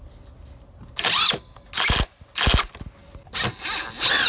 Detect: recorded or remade recorded